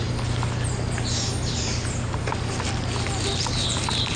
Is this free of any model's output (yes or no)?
yes